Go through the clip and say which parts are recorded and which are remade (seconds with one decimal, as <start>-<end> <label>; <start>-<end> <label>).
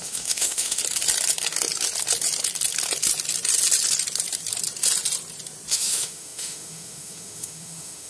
0.0-0.8 remade; 0.8-5.7 recorded; 5.7-8.1 remade